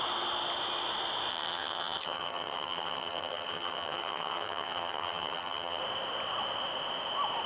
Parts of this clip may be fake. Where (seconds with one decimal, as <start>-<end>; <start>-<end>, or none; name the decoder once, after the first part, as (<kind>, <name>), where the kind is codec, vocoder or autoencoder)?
1.3-5.8 (vocoder, HiFi-GAN)